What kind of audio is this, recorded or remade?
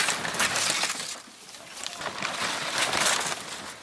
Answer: recorded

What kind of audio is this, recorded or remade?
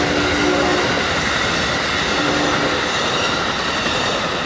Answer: recorded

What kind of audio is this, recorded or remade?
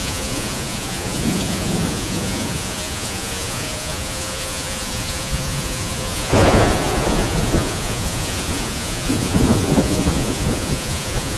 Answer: remade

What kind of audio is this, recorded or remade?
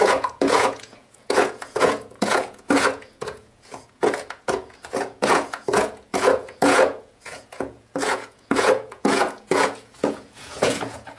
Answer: remade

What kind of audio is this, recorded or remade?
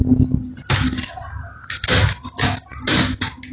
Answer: recorded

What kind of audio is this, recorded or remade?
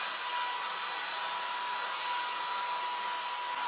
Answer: recorded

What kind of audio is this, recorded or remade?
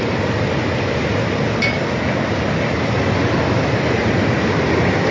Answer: recorded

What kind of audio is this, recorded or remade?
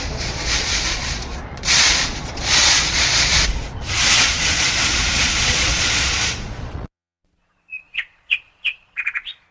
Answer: remade